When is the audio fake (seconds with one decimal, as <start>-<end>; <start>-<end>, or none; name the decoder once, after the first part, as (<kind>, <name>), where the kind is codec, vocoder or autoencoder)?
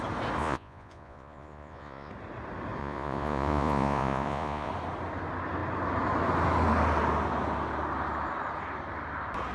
0.4-2.1 (vocoder, Vocos); 2.8-4.7